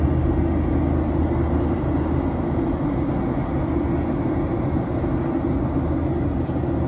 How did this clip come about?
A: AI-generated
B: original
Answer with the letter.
B